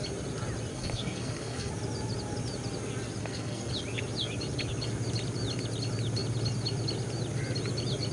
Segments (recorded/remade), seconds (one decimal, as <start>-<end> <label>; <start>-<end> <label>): 0.0-0.7 recorded; 0.7-1.7 remade; 1.7-3.2 recorded; 3.2-3.7 remade; 3.7-8.1 recorded